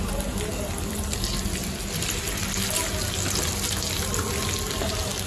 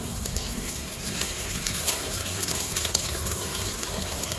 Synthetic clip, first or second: second